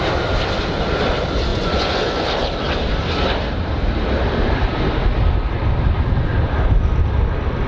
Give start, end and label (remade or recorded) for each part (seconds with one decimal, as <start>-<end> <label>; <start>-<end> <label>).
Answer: 0.0-1.5 recorded; 1.5-2.3 remade; 2.3-7.7 recorded